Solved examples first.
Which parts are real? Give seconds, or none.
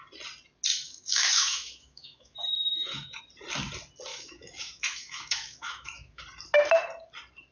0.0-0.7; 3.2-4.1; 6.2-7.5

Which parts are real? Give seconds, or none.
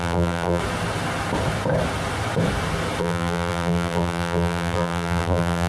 0.6-3.0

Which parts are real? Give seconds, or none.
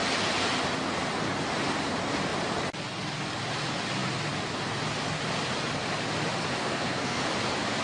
0.0-6.6; 7.2-7.8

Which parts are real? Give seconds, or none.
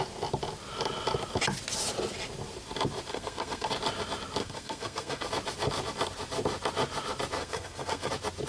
0.0-3.1; 3.7-4.4; 5.3-7.4; 8.1-8.5